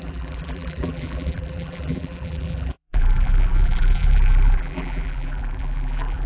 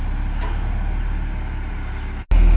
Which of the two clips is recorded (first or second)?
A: second